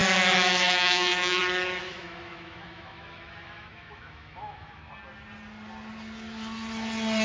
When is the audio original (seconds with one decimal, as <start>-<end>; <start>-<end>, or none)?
1.4-1.8; 4.9-7.2